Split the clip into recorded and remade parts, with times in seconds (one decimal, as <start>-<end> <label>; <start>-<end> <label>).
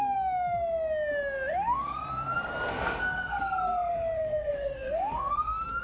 0.0-1.5 recorded; 1.5-2.0 remade; 2.0-2.7 recorded; 2.7-5.8 remade